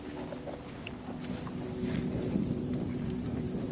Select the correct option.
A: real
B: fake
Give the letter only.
A